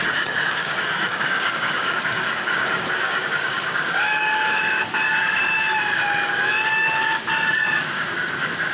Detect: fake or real fake